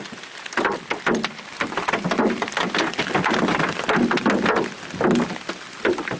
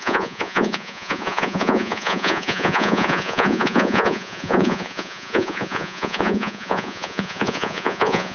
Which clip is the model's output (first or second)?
second